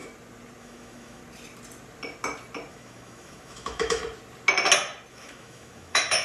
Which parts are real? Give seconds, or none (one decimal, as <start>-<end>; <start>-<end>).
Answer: 0.0-0.6; 1.2-2.7; 4.0-5.1

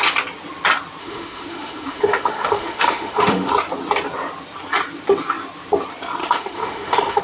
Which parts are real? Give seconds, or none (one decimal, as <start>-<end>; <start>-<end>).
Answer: 0.0-1.0; 3.5-6.2

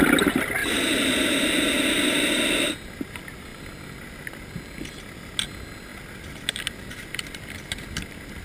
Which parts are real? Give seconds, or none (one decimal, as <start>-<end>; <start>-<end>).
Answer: 0.0-8.4